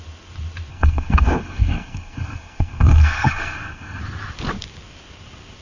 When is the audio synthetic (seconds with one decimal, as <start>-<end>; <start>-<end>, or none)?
0.7-4.0